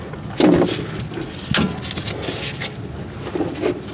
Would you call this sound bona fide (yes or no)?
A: yes